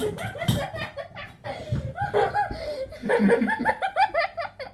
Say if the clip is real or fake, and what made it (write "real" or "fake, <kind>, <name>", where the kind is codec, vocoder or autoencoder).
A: real